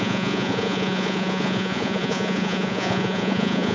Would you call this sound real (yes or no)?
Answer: no